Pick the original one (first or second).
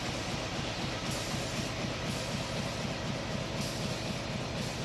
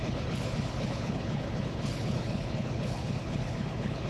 first